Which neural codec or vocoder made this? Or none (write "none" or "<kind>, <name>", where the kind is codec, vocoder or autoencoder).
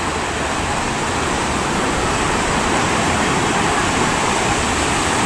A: vocoder, BigVGAN v2